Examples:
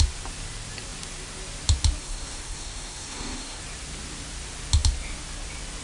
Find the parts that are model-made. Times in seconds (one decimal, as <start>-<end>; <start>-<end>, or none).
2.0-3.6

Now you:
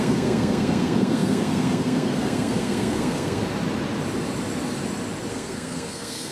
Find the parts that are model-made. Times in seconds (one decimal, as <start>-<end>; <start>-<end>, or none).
0.0-3.4; 5.3-6.3

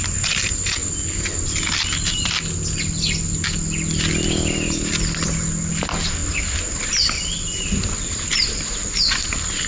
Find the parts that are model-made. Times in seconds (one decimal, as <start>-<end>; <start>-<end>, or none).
none